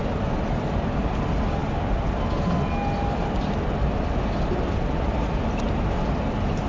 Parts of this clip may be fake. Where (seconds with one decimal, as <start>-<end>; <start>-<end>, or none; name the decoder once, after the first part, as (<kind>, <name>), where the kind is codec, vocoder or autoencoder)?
none

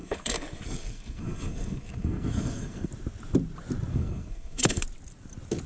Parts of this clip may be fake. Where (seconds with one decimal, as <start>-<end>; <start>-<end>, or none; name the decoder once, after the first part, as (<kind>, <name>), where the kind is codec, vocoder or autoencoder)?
0.0-2.9 (codec, SNAC); 3.9-4.8

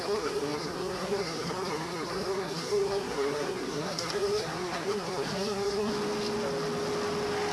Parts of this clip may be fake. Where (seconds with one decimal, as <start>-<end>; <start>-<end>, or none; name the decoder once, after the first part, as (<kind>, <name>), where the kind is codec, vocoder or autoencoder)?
0.0-5.9 (codec, SNAC)

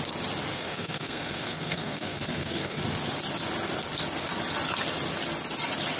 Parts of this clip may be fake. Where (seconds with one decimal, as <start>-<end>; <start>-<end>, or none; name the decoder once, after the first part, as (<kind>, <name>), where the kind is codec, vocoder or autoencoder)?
0.5-2.8 (codec, SNAC)

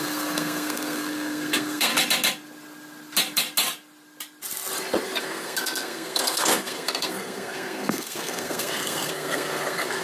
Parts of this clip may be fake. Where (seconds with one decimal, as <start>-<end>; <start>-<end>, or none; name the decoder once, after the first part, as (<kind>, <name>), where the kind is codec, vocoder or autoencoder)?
0.0-1.9 (codec, SNAC); 5.2-10.0